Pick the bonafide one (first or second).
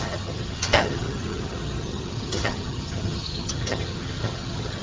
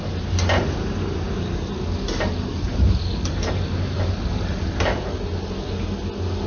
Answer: second